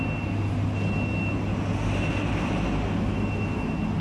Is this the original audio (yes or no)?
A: yes